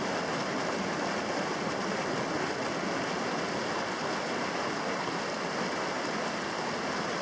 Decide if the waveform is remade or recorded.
recorded